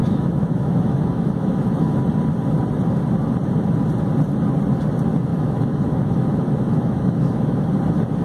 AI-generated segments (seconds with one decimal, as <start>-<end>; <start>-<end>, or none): 0.0-2.0; 5.3-7.7